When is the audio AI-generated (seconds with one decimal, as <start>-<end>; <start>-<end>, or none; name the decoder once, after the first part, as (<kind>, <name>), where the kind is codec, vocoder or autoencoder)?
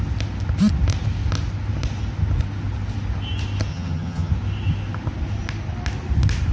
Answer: 3.7-4.3 (vocoder, HiFi-GAN)